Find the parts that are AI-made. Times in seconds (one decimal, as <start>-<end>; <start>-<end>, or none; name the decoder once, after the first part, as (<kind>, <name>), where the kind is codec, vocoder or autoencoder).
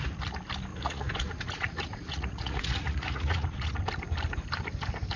0.7-3.8 (vocoder, Vocos)